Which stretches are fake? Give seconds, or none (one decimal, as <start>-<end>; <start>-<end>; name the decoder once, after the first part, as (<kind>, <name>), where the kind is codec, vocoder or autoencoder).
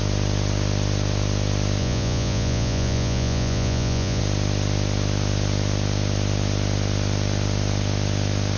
1.8-4.2 (vocoder, Vocos)